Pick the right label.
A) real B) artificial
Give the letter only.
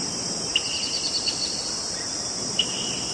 B